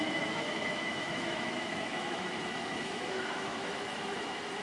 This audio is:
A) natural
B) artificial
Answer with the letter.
B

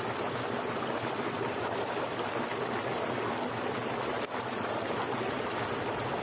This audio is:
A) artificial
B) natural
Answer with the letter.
B